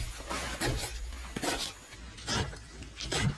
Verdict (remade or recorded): recorded